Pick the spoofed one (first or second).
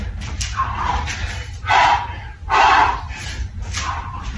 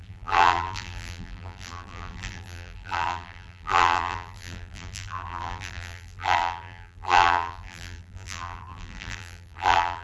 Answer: second